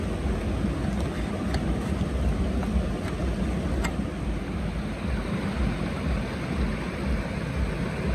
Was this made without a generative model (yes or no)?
yes